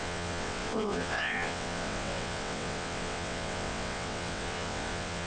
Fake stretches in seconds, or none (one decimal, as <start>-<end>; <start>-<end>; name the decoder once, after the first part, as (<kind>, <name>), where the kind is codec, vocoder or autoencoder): 0.0-5.3 (vocoder, WaveNeXt)